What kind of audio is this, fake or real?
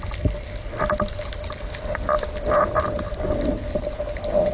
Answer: real